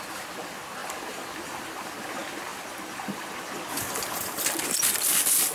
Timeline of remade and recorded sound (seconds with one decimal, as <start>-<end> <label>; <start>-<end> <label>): 0.0-5.5 recorded